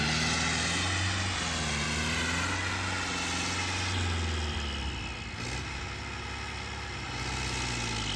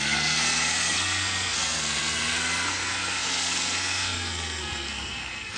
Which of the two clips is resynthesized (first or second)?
second